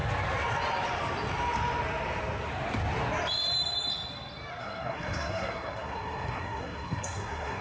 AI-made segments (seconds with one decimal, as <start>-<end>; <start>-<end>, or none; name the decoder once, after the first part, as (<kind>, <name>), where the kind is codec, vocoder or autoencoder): 4.6-7.6 (codec, SNAC)

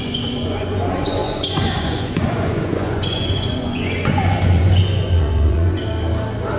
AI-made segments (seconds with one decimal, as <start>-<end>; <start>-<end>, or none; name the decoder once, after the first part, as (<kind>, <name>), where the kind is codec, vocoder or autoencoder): 0.0-5.8 (vocoder, Vocos)

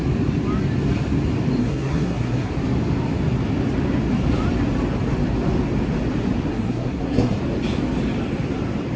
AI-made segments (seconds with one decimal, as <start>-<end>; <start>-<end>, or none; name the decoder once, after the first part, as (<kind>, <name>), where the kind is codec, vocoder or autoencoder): 1.6-2.5 (codec, SNAC); 6.5-7.4

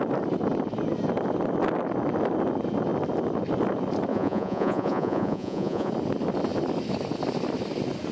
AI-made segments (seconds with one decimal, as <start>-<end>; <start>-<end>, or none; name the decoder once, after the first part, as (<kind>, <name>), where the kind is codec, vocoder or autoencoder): 4.1-5.9 (vocoder, Vocos)

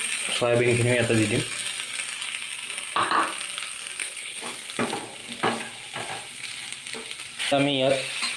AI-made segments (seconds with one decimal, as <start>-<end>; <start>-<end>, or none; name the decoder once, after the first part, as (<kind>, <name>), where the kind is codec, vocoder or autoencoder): 4.0-4.7 (codec, HILCodec)